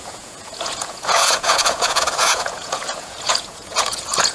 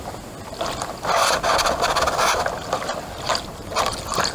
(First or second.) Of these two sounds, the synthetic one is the first